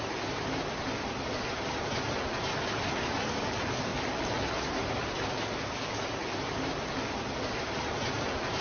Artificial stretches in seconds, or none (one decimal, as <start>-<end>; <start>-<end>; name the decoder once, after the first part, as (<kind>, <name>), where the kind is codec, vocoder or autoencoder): none

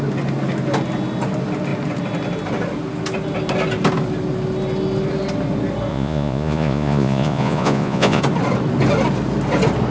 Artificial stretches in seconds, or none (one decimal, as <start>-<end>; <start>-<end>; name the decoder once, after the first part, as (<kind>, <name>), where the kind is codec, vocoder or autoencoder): 5.9-8.2 (vocoder, Vocos)